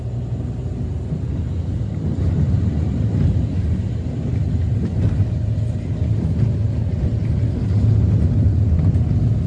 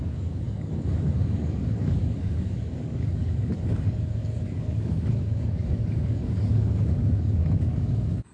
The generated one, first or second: second